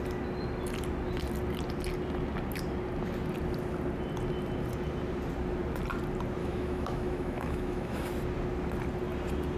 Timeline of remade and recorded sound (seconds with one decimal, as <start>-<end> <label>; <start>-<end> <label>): 0.0-6.4 recorded; 6.4-8.1 remade; 8.1-9.6 recorded